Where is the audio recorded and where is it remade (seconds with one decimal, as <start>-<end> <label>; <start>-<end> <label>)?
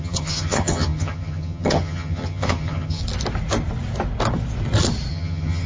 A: 0.0-3.0 remade; 3.0-5.1 recorded; 5.1-5.7 remade